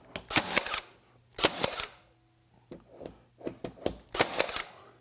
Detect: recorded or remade recorded